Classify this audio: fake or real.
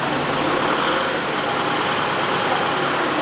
real